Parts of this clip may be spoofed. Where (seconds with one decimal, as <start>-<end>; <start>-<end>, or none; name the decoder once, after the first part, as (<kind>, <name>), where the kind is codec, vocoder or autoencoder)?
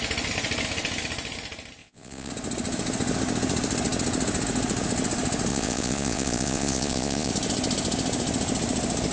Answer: 1.8-2.3 (vocoder, Vocos); 5.5-7.3